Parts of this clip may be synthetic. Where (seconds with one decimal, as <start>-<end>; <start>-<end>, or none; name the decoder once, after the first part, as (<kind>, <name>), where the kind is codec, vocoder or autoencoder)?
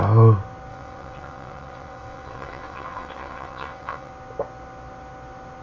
0.7-4.1 (vocoder, WaveNeXt)